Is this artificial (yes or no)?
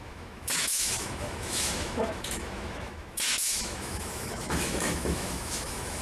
yes